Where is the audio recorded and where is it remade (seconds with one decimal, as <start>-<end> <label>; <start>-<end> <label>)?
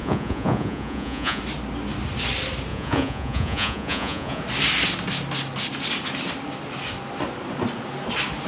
0.0-1.4 remade; 1.4-2.7 recorded; 2.7-4.4 remade; 4.4-8.5 recorded